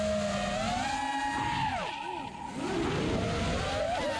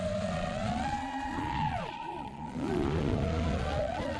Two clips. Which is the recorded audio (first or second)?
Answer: first